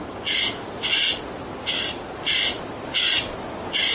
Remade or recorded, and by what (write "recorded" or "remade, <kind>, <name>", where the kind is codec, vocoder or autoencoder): recorded